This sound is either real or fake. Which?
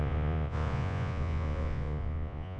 fake